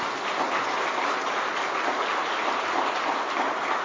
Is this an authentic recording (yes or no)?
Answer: yes